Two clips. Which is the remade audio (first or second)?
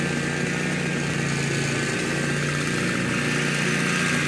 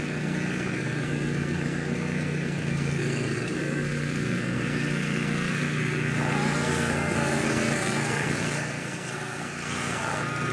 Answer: second